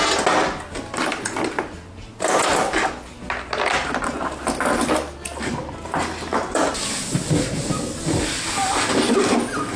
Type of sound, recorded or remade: recorded